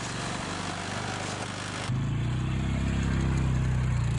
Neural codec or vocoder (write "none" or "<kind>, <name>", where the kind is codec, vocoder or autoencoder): none